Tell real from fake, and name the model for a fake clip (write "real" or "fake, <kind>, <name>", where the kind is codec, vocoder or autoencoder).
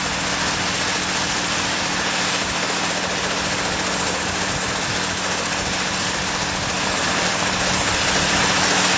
real